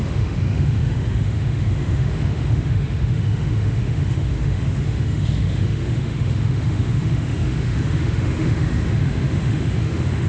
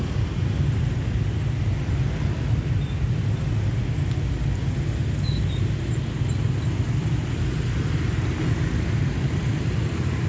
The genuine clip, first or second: second